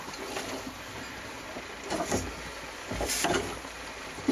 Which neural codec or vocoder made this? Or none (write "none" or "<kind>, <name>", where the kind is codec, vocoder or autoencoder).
none